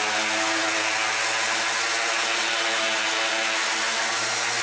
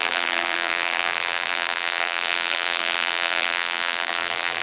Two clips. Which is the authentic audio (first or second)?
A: first